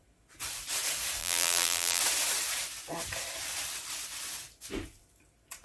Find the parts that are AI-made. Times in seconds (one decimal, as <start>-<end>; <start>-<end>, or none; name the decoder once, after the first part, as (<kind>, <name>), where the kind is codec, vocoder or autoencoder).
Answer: 1.2-2.0 (vocoder, BigVGAN v2)